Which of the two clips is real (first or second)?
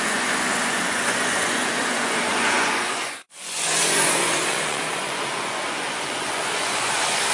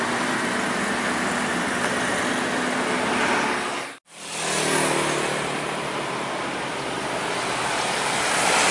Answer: second